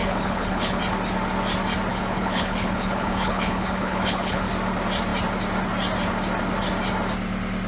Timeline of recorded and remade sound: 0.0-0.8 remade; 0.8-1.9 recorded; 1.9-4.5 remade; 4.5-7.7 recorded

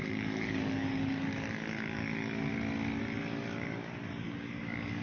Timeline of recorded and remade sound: 0.0-2.5 remade; 2.5-3.0 recorded; 3.0-5.0 remade

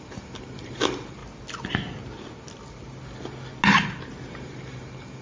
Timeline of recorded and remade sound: 0.0-1.2 remade; 1.2-4.3 recorded; 4.3-5.2 remade

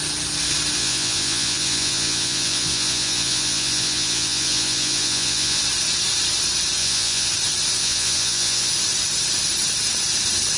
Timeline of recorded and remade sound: 0.0-0.8 recorded; 0.8-5.6 remade; 5.6-6.8 recorded; 6.8-7.3 remade; 7.3-7.8 recorded; 7.8-8.7 remade; 8.7-10.6 recorded

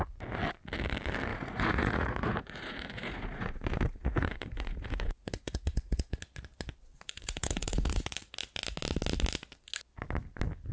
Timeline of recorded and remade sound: 0.0-1.3 recorded; 1.3-6.2 remade; 6.2-6.9 recorded; 6.9-8.3 remade; 8.3-10.7 recorded